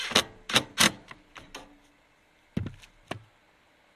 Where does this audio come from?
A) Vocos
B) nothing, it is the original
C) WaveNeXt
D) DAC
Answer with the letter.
B